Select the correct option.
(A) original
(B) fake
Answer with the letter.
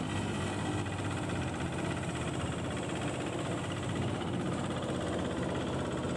A